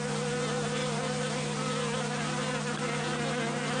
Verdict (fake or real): real